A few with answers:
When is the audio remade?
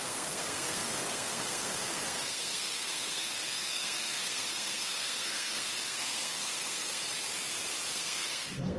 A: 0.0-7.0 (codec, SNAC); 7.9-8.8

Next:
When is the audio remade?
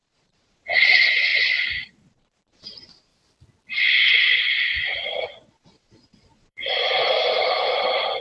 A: 0.0-3.1 (vocoder, Vocos); 4.2-6.8